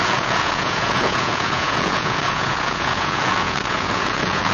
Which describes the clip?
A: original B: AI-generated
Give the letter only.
B